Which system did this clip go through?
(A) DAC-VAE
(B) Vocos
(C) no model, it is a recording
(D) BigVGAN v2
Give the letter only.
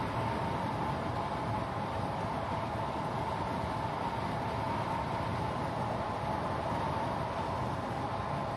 C